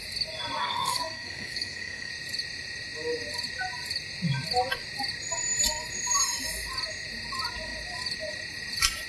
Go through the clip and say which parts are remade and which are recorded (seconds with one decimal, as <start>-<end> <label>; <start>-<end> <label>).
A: 0.0-0.6 recorded; 0.6-2.1 remade; 2.1-9.1 recorded